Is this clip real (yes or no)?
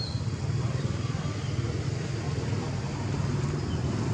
yes